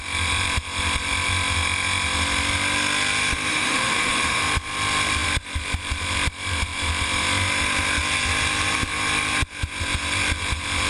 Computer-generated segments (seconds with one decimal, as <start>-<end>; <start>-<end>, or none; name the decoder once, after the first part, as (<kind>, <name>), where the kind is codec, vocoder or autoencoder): 3.5-4.4 (autoencoder, DAC-VAE)